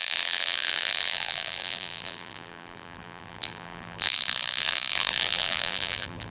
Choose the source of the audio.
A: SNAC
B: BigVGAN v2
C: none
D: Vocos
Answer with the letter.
B